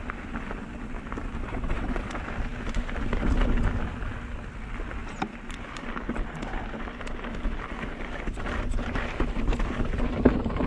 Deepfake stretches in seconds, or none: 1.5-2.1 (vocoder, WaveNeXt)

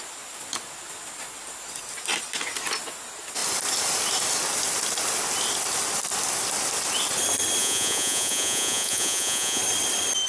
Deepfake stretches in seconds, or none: 7.6-9.6 (vocoder, Vocos)

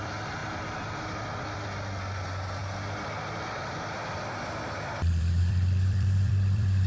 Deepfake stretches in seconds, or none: 0.0-0.4 (vocoder, BigVGAN v2); 1.4-6.9

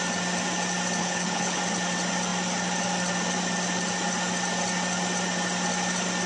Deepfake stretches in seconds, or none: 1.0-1.6 (codec, HILCodec)

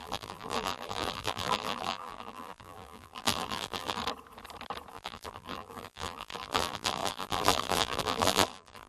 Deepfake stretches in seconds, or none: 0.0-4.0 (vocoder, BigVGAN v2); 4.9-8.9